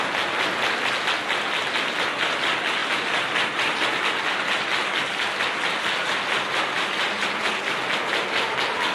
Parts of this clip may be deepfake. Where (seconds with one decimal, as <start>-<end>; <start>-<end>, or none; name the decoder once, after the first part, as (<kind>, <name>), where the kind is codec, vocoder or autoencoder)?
none